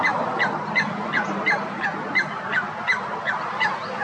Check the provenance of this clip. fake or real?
real